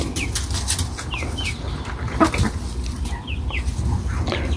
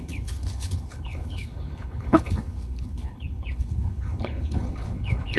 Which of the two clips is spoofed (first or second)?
second